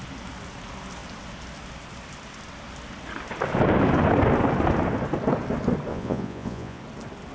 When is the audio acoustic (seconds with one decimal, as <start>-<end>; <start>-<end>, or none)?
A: 0.0-5.9; 6.8-7.3